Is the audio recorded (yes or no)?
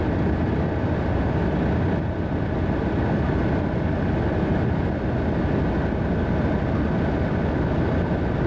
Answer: yes